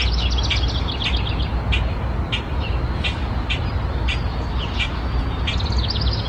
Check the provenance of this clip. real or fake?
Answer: real